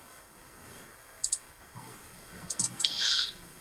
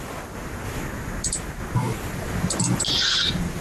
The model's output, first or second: first